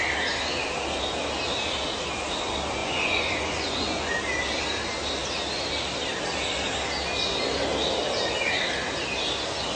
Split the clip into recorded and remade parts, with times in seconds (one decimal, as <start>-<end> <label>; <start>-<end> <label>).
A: 0.0-2.8 recorded; 2.8-4.1 remade; 4.1-9.8 recorded